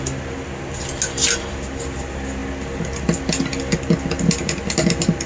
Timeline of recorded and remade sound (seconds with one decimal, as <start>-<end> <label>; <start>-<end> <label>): 0.0-5.3 recorded